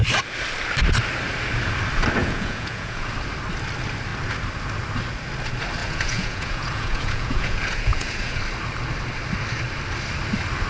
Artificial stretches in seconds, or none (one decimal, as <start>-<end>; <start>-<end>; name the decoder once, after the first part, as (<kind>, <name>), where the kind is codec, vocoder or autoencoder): 2.2-3.1 (vocoder, Vocos); 5.8-8.4

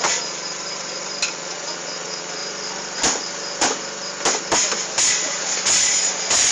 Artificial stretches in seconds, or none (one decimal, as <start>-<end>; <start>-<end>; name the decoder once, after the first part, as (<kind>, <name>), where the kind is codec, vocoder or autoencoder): 0.0-0.5 (vocoder, Vocos); 1.3-2.4; 5.0-6.5

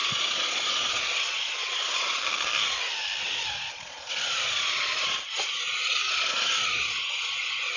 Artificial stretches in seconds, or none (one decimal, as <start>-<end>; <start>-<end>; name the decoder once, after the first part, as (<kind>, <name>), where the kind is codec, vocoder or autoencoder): 0.0-2.2 (vocoder, Vocos); 3.2-7.8